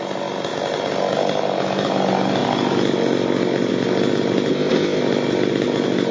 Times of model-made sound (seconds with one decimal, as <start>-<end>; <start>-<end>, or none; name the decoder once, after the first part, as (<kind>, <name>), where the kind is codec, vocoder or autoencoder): 4.5-5.0 (codec, ZipCodec)